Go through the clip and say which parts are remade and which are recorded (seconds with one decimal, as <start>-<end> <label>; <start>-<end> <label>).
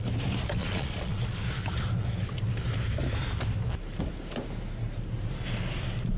0.0-0.6 recorded; 0.6-1.2 remade; 1.2-6.2 recorded